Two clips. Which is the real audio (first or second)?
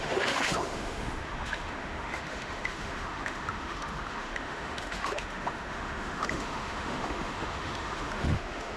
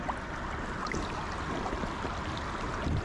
second